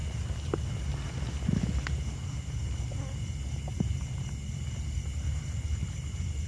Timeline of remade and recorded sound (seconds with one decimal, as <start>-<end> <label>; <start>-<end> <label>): 0.0-6.5 recorded